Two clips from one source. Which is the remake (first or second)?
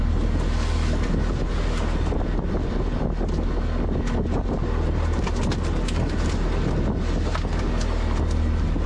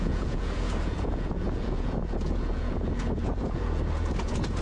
second